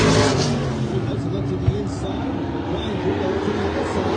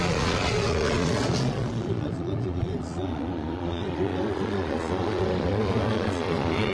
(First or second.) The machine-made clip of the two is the second